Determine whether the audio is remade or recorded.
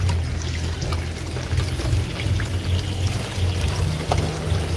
recorded